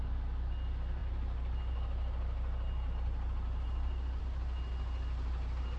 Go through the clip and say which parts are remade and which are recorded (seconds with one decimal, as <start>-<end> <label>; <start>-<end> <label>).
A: 0.0-5.8 recorded